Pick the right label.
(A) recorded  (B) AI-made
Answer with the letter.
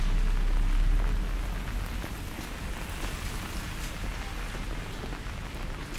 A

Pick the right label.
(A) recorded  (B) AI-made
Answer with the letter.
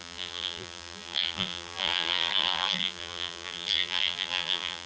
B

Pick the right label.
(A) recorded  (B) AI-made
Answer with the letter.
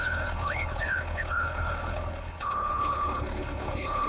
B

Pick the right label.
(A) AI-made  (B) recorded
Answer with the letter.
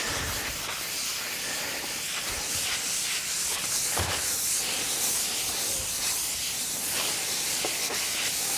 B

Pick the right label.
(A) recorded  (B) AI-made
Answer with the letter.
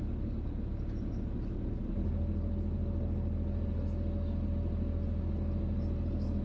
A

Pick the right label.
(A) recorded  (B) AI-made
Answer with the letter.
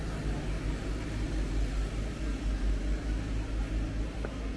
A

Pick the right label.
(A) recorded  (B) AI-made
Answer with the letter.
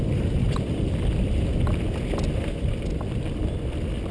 A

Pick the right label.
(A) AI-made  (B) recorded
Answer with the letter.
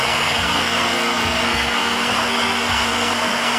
A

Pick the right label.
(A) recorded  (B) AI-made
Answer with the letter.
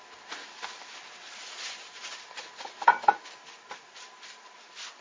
A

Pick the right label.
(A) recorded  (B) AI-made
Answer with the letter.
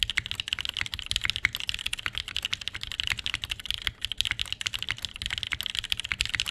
A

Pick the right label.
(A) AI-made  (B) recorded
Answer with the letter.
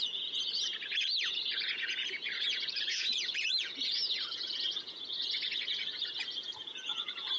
A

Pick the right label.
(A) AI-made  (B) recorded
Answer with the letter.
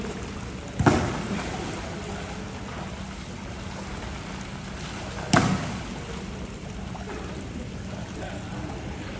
B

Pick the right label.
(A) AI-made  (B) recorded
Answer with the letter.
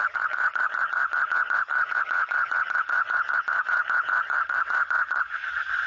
A